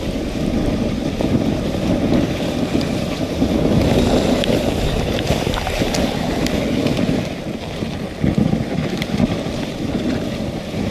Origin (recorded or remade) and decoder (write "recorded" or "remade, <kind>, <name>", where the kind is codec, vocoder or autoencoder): recorded